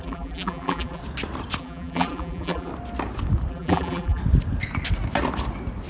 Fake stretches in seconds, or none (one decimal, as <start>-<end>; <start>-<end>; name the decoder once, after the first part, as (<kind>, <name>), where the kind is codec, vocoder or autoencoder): 0.0-1.0 (vocoder, BigVGAN v2); 1.6-2.7; 3.5-4.2